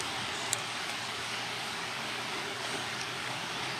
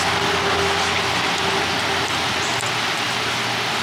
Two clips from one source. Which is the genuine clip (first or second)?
second